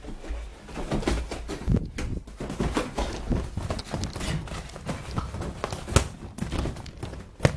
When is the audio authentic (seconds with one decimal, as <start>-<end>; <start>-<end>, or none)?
0.0-7.6